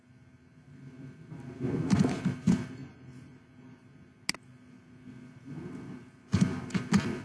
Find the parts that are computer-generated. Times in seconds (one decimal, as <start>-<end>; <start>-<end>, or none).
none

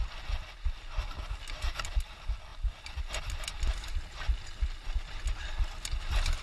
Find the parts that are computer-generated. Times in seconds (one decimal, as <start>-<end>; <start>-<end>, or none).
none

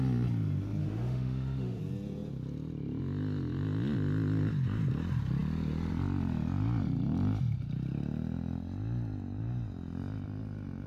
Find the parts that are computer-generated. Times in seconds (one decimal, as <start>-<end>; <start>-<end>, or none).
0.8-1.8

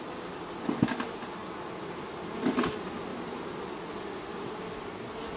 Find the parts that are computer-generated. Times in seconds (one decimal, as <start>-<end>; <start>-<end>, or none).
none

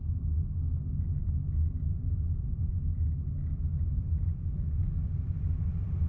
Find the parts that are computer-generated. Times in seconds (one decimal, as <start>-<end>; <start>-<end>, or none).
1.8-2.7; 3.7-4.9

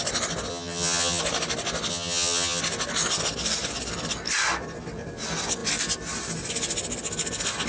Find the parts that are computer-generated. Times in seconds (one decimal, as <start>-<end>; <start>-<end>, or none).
0.5-1.2; 1.9-2.6

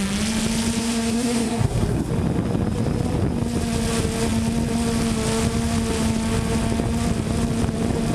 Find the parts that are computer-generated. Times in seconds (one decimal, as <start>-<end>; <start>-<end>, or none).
0.8-2.1